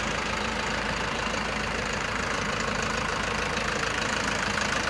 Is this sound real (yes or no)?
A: no